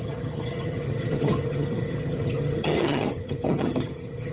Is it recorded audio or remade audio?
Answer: remade